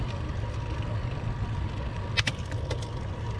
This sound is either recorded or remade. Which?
recorded